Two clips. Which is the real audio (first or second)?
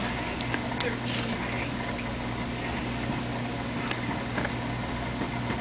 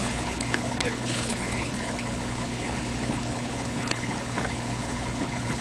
first